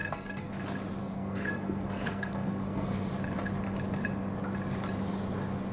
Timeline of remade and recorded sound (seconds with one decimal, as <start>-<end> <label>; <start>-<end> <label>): 0.0-0.5 remade; 0.5-1.0 recorded; 1.0-3.1 remade; 3.1-5.7 recorded